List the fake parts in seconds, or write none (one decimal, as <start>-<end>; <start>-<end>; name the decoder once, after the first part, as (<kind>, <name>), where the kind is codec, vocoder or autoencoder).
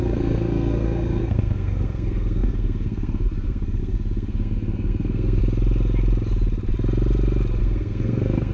0.0-5.4 (codec, SNAC); 7.6-8.5